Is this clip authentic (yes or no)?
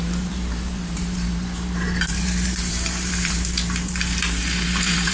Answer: no